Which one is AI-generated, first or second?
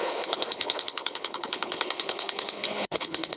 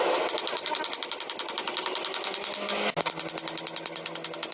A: first